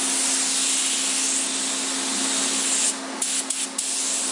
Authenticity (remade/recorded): recorded